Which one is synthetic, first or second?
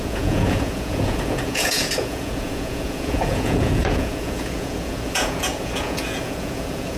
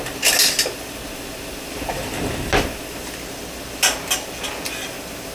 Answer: first